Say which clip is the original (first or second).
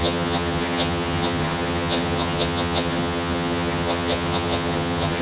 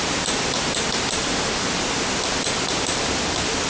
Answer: second